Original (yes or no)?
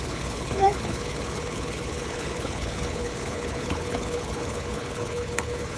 no